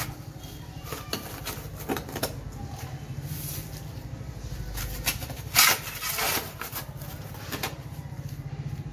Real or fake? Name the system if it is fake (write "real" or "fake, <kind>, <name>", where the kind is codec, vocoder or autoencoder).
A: real